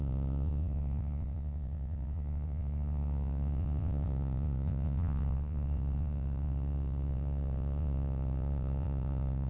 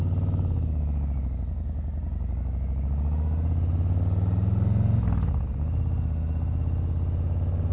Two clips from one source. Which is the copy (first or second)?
first